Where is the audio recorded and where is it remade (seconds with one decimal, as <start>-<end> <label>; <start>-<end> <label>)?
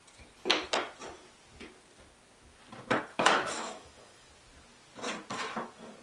0.0-3.1 recorded; 3.1-4.3 remade; 4.3-6.0 recorded